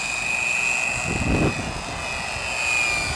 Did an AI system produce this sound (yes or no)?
no